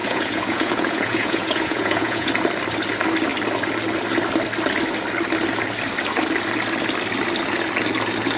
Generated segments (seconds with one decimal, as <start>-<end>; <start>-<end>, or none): 0.0-2.3